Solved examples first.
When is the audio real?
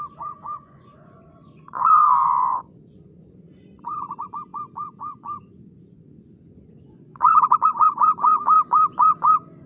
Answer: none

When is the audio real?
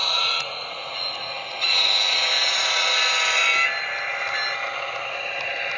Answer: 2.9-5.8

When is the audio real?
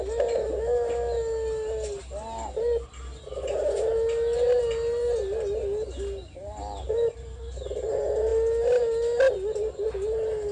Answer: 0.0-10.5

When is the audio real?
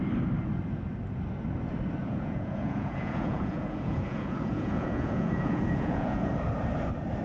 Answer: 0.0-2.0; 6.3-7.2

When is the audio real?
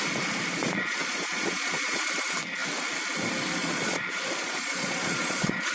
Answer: 0.0-0.6; 2.0-3.6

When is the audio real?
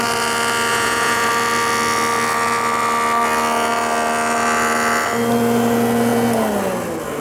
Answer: 0.0-0.7; 1.3-7.2